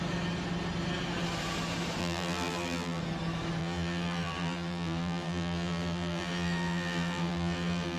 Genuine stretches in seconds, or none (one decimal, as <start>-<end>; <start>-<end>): 0.0-2.0; 3.0-3.6